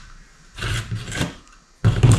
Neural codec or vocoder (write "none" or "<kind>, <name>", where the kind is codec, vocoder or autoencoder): none